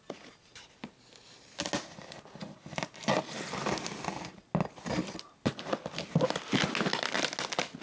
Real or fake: real